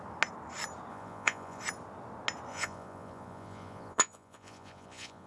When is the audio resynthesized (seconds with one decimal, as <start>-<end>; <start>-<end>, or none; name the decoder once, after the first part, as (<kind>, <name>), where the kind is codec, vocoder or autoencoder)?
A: 0.9-1.6 (vocoder, Vocos); 2.5-5.3